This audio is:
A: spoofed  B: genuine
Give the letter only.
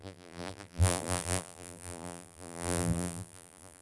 A